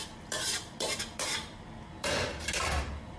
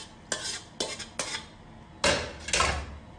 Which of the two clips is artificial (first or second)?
first